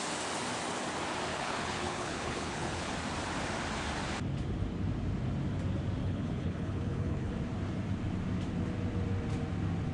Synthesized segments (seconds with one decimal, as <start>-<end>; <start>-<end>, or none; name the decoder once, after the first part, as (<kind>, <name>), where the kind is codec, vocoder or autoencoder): 1.3-2.9 (codec, HILCodec); 6.0-7.3